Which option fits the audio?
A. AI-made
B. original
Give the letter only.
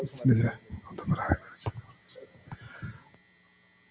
B